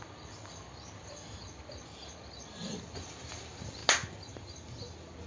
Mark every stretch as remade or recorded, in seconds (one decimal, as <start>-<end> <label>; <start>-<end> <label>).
0.0-3.8 remade; 3.8-4.3 recorded; 4.3-5.3 remade